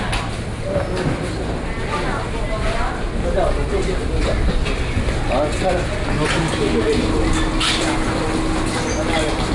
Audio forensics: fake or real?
real